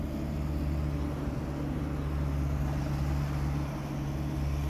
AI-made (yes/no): no